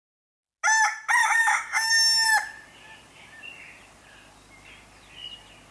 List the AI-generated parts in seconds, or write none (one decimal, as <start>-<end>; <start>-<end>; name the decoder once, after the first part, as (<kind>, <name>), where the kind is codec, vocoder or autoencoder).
1.2-1.9 (autoencoder, DAC-VAE)